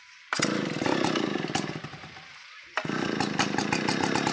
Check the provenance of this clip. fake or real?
real